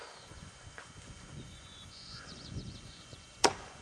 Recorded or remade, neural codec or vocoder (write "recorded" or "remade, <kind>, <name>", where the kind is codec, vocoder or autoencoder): remade, vocoder, Vocos